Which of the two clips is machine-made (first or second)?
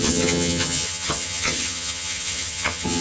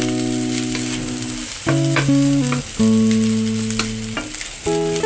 first